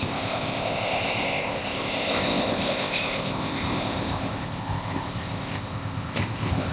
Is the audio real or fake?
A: fake